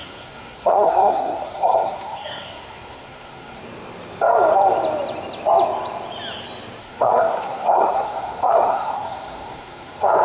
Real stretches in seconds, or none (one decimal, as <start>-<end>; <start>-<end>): 3.6-6.8